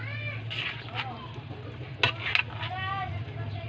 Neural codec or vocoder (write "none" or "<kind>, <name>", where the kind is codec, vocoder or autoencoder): none